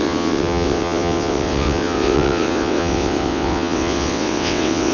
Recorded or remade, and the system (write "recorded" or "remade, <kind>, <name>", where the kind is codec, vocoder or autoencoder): remade, vocoder, WaveNeXt